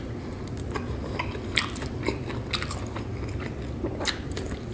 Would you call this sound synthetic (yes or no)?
no